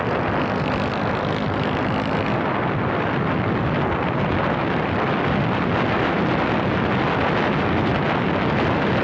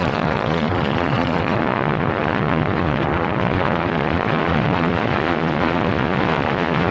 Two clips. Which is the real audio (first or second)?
first